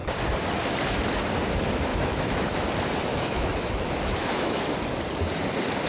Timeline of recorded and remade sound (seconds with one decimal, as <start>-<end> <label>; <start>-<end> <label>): 0.0-1.9 recorded; 1.9-2.6 remade; 2.6-3.1 recorded; 3.1-4.6 remade; 4.6-5.9 recorded